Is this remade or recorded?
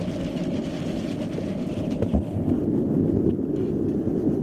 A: recorded